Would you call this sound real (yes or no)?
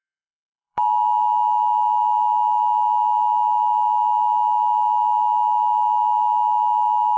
no